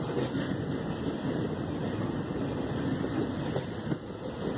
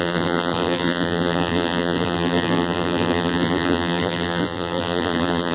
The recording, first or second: first